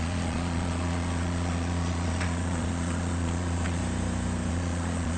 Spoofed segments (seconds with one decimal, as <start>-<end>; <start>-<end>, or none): 0.0-3.8; 4.5-5.2